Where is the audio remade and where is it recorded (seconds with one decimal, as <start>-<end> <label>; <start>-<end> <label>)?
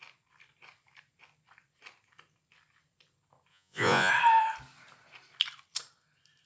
0.0-3.5 recorded; 3.5-4.1 remade; 4.1-6.5 recorded